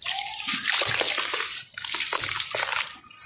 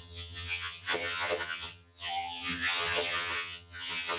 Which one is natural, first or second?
first